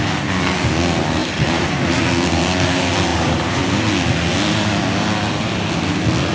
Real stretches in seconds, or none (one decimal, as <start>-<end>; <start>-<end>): 0.0-1.2; 2.0-3.1; 3.6-6.3